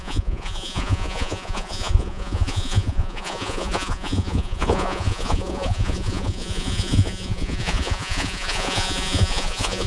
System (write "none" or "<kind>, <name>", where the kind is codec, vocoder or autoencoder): vocoder, Vocos